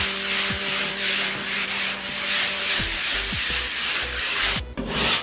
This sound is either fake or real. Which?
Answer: real